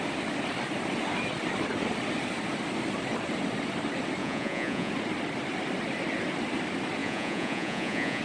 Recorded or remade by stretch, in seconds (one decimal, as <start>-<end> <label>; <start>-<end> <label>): 0.0-4.2 recorded; 4.2-4.9 remade; 4.9-7.0 recorded; 7.0-8.2 remade